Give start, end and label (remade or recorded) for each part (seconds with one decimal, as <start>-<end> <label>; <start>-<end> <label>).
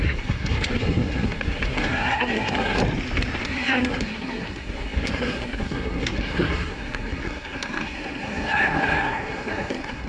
0.0-2.8 remade; 2.8-3.4 recorded; 3.4-10.1 remade